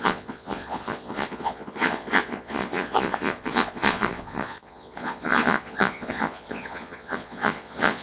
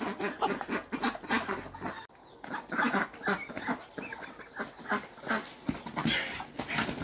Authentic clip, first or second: second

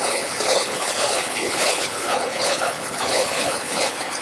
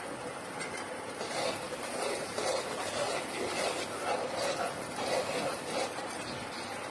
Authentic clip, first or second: second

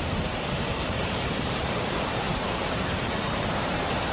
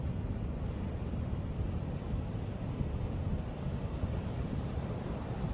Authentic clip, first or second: second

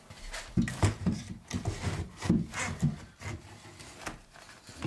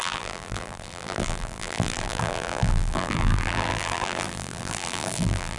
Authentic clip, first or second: first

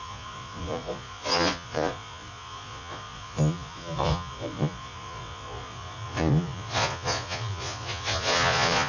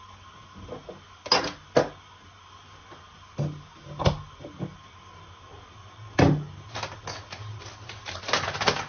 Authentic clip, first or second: second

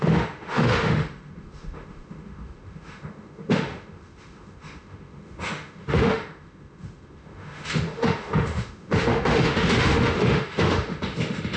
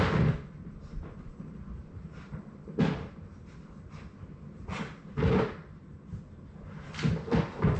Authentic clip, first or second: second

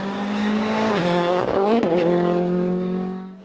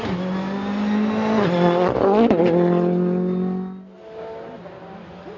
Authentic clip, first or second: second